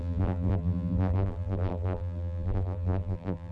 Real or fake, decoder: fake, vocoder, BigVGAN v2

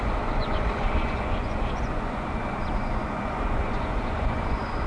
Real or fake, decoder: fake, vocoder, Vocos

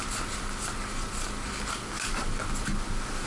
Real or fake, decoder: real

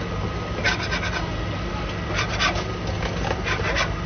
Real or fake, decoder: real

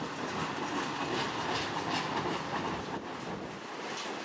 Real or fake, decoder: real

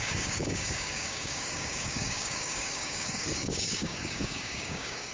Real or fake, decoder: fake, codec, DAC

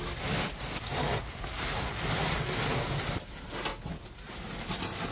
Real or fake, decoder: real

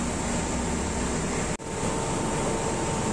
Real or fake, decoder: real